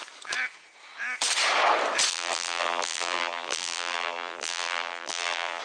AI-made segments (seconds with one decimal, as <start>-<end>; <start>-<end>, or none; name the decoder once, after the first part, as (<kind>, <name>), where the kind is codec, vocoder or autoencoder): 2.1-5.6 (vocoder, BigVGAN v2)